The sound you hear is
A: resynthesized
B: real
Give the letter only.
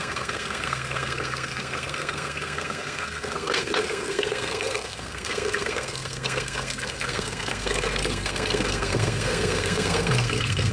A